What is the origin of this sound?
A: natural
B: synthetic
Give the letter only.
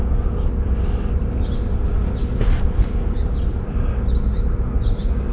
A